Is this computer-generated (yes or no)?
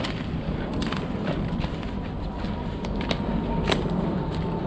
no